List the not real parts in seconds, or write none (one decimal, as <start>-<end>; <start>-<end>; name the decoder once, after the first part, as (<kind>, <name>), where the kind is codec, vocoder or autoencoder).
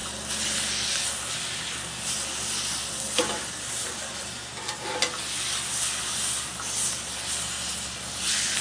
none